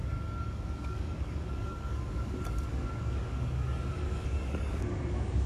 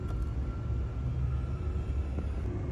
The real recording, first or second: second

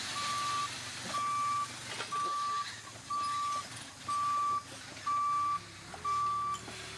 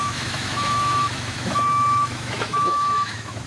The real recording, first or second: first